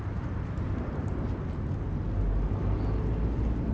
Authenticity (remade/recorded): recorded